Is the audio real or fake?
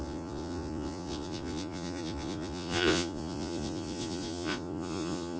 fake